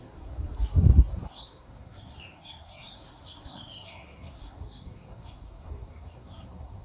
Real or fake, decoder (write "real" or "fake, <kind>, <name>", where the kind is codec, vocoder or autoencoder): fake, codec, SNAC